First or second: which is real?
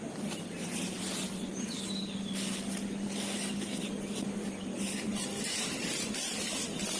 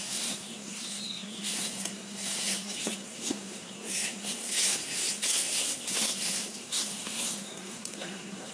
first